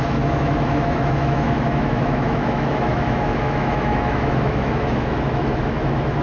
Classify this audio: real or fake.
fake